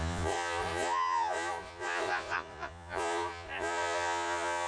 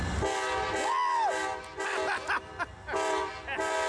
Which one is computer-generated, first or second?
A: first